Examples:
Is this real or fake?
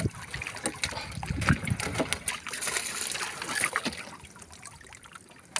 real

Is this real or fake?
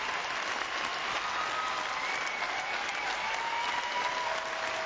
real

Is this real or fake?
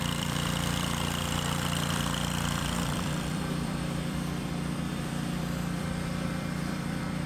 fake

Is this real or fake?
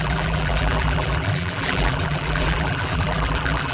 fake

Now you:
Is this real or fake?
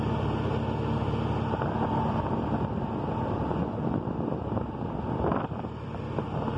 real